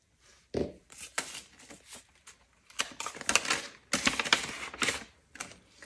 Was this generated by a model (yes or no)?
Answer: no